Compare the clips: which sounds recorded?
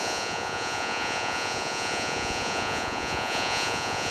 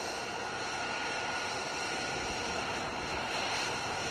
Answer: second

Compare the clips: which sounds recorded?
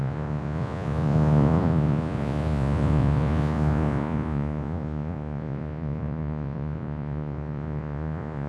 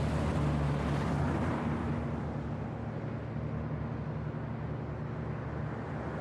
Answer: second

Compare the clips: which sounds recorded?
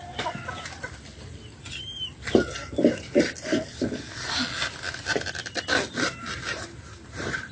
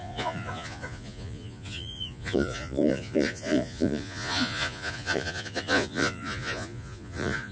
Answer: first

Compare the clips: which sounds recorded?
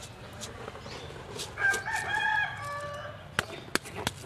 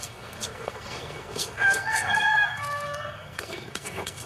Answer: first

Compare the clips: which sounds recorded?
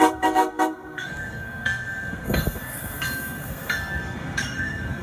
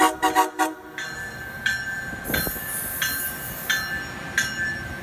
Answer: second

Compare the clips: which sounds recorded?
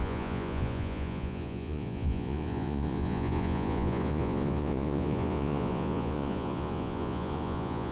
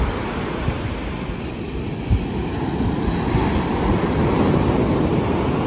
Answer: second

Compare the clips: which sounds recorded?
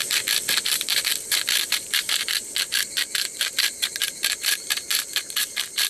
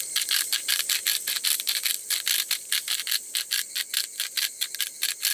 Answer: second